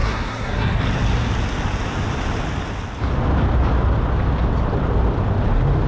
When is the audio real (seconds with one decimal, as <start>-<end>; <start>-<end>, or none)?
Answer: 0.8-5.9